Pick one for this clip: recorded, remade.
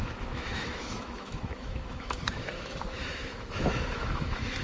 remade